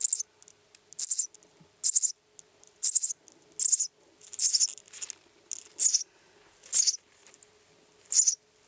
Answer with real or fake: real